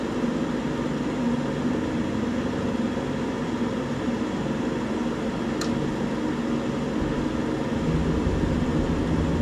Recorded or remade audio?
recorded